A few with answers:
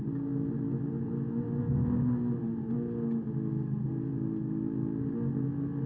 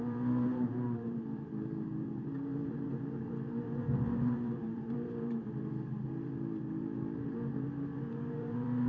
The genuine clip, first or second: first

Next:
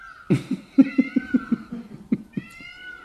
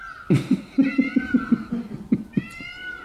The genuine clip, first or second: second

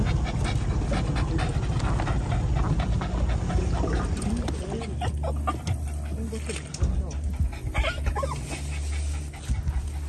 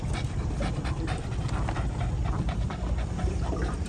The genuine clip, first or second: first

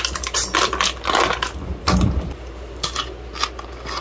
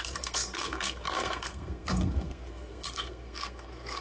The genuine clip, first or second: first